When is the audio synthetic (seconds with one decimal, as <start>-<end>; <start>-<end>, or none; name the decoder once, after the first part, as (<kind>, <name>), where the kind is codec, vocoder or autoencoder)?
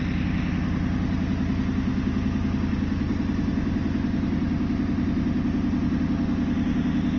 none